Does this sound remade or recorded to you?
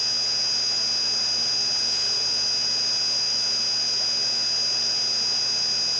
recorded